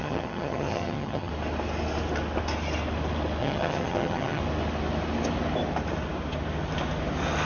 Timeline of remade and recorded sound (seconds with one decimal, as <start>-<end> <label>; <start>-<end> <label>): 0.0-1.3 remade; 1.3-3.4 recorded; 3.4-4.4 remade; 4.4-7.4 recorded